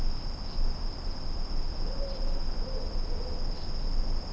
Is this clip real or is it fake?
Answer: real